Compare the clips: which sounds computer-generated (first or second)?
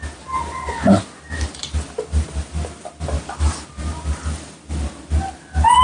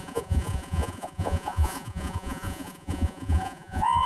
second